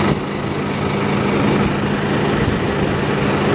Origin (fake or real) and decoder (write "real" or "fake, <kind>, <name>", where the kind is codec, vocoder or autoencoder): real